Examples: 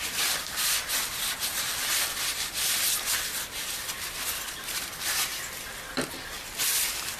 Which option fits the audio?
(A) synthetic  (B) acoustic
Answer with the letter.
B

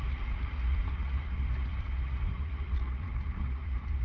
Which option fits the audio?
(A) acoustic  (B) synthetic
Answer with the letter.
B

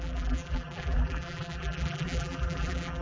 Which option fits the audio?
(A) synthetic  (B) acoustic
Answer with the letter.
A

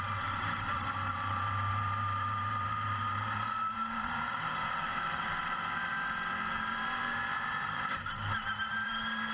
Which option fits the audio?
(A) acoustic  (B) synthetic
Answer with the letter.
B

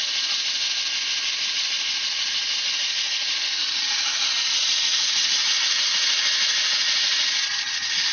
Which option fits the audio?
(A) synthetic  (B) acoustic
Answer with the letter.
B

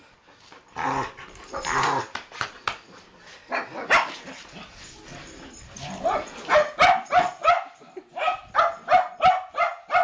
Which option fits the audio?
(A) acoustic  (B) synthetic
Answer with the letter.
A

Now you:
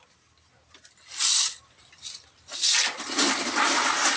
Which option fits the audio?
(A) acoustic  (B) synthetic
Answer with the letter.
A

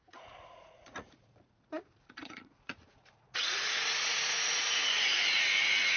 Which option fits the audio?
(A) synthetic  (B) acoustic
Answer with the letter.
A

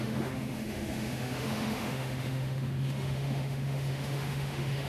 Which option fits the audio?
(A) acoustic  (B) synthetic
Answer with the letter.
B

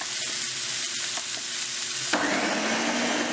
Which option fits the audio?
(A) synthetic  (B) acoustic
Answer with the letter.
B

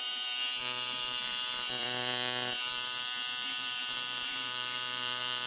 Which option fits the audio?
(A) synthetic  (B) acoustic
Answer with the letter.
A